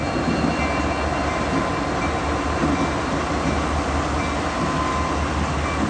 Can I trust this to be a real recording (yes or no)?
yes